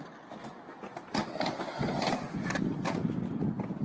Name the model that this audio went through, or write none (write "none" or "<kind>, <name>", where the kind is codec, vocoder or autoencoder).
none